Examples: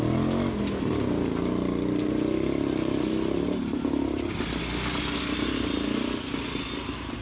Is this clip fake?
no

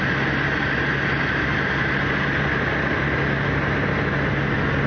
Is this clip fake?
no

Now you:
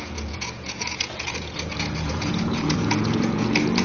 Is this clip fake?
yes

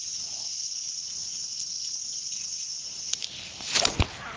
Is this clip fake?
no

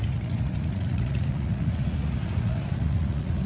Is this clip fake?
yes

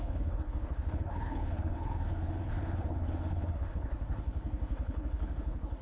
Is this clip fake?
yes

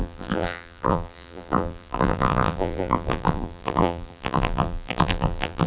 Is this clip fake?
yes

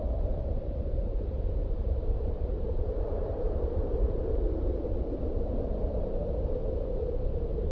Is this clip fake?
yes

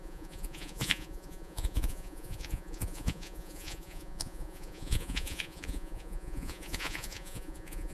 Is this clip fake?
yes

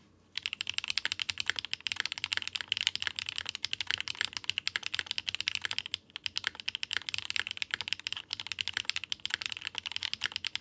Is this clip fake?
no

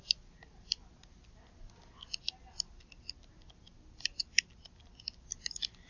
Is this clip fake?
no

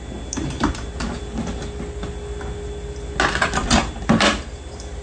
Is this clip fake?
no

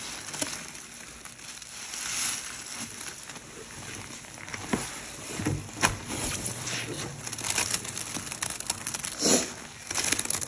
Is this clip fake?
no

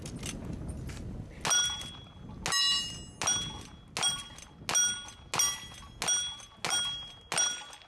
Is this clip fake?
no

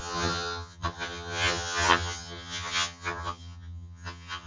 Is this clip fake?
yes